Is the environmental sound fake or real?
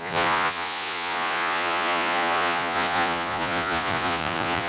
fake